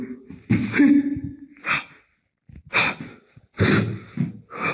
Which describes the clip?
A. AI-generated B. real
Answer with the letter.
B